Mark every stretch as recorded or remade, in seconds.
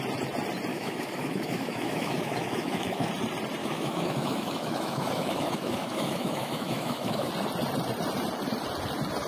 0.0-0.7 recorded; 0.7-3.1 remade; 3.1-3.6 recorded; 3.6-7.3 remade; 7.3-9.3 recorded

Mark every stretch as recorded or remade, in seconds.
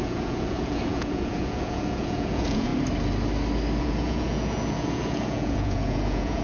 0.0-2.7 remade; 2.7-3.8 recorded; 3.8-6.4 remade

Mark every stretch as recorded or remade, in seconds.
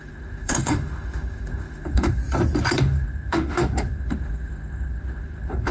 0.0-2.2 remade; 2.2-2.8 recorded; 2.8-5.7 remade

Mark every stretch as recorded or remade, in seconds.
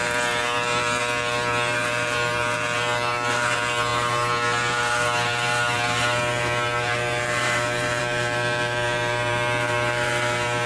0.0-10.7 remade